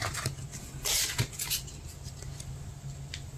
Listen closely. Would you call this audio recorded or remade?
recorded